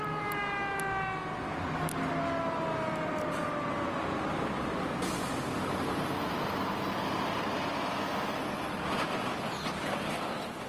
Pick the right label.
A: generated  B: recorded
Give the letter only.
B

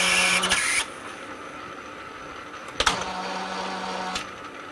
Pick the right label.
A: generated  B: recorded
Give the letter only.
B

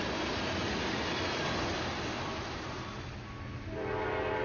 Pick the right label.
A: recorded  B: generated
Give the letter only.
A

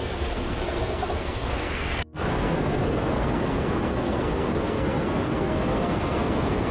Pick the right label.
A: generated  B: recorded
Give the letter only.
A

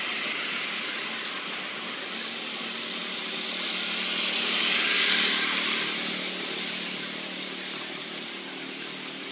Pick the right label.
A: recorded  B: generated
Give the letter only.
A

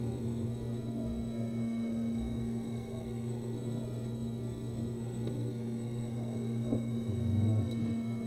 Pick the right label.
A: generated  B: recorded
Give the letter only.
A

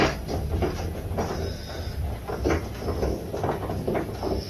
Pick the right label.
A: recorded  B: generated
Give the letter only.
A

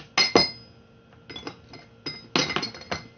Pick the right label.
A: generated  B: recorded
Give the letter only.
B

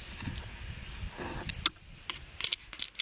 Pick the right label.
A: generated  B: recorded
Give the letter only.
B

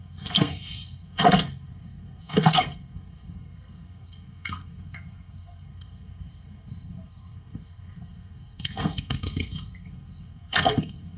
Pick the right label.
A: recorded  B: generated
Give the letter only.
B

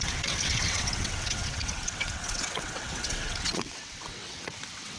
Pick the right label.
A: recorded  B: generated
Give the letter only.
B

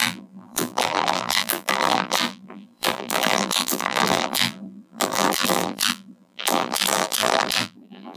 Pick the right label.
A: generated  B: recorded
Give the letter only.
A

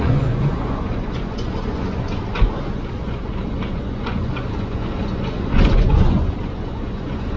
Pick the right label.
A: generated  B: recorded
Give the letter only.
A